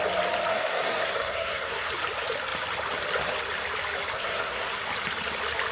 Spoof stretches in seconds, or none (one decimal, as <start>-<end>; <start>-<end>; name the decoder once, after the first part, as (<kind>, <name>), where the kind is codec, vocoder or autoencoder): 0.5-1.9 (codec, SNAC); 4.1-4.7